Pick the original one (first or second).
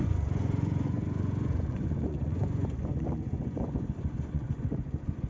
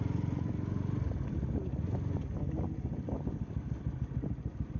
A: second